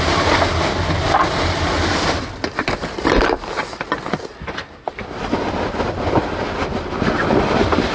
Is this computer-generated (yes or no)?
no